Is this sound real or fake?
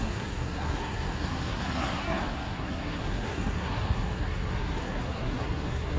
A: fake